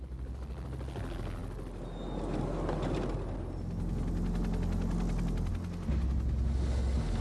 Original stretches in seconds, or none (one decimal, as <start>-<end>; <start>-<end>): 0.0-7.2

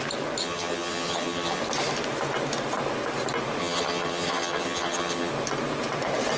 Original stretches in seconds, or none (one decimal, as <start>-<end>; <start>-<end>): 0.0-0.4; 1.6-3.6; 5.3-6.4

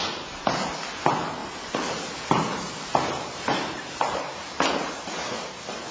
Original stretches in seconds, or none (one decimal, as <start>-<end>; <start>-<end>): 0.0-1.4; 4.9-5.9

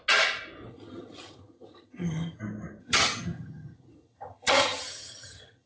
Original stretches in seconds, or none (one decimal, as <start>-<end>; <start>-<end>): 0.0-0.7; 2.4-2.8

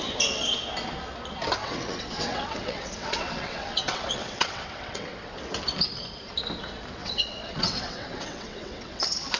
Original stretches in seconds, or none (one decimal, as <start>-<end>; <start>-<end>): 0.0-1.6; 5.4-7.0; 9.0-9.4